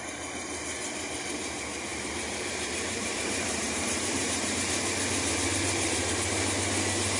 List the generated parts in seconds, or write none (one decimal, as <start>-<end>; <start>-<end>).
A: 1.9-4.7